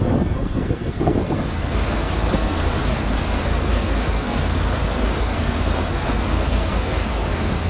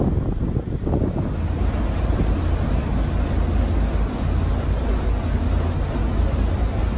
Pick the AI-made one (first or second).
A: first